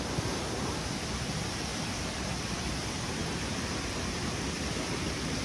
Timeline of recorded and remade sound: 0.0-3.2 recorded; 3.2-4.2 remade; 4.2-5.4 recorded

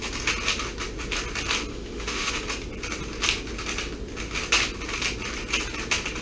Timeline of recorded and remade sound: 0.0-1.7 recorded; 1.7-2.3 remade; 2.3-6.2 recorded

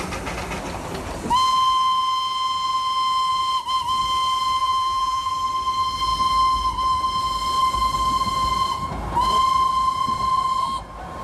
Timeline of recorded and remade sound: 0.0-4.6 recorded; 4.6-5.3 remade; 5.3-11.2 recorded

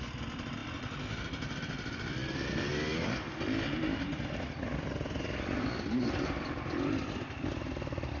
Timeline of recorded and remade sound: 0.0-2.7 remade; 2.7-6.6 recorded; 6.6-8.2 remade

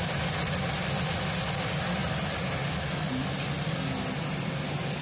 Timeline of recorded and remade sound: 0.0-5.0 recorded

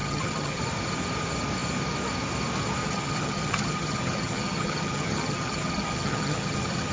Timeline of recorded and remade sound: 0.0-0.6 remade; 0.6-2.8 recorded; 2.8-6.9 remade